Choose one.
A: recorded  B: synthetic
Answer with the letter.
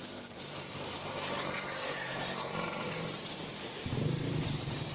B